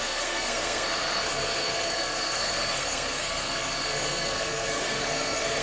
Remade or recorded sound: remade